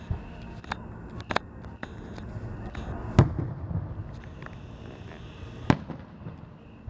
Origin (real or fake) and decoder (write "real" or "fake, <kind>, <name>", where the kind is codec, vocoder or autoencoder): real